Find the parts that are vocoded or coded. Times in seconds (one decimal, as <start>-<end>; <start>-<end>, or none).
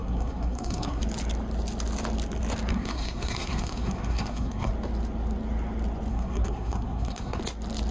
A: 0.0-1.0; 2.7-4.7; 6.1-7.4